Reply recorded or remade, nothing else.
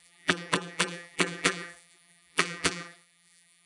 remade